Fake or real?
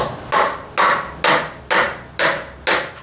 real